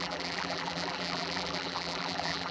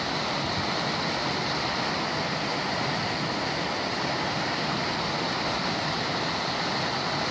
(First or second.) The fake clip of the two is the first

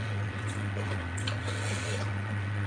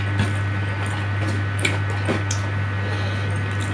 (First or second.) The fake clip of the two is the first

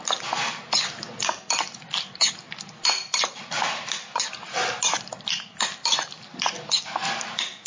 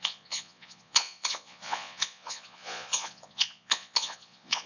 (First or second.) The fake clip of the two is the second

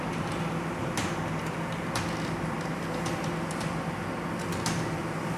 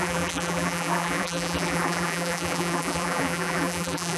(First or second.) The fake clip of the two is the second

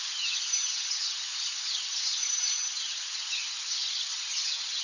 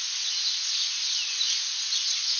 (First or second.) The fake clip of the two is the first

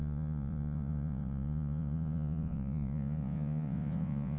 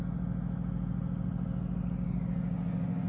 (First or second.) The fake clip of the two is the first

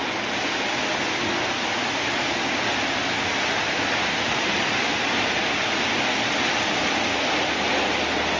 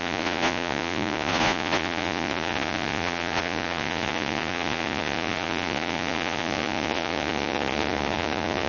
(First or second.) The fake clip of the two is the second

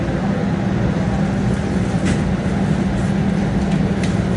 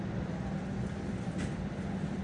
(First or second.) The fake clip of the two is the second